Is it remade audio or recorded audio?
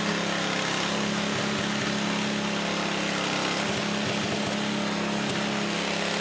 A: recorded